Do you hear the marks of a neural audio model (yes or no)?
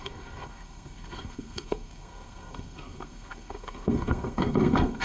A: yes